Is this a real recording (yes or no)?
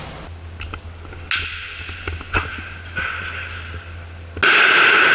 yes